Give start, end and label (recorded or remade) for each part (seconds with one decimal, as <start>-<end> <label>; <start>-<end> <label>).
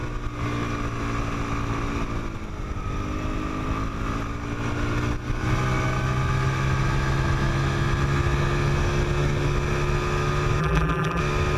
0.0-10.6 recorded; 10.6-11.2 remade; 11.2-11.6 recorded